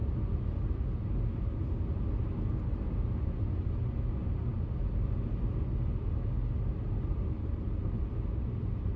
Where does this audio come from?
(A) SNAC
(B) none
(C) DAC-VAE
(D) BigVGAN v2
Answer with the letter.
B